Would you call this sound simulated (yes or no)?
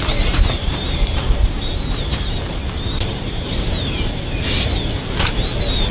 yes